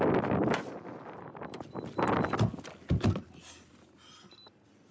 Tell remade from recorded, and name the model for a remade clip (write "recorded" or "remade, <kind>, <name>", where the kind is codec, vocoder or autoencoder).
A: recorded